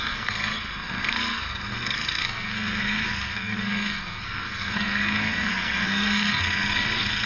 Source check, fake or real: fake